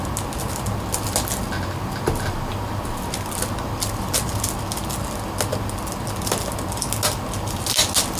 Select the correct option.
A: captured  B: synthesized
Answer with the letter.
A